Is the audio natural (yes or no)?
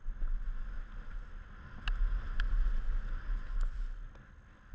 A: yes